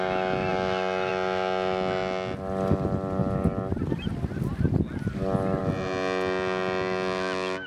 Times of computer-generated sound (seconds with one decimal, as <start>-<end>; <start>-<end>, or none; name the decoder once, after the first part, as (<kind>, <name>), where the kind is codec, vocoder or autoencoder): none